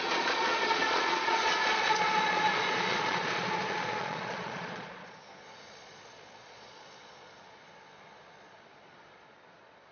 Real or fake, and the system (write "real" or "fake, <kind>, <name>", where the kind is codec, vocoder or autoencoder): fake, vocoder, Vocos